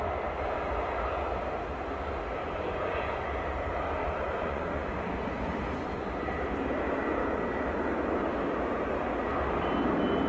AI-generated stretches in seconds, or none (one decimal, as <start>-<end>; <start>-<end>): 2.4-3.3; 4.0-5.4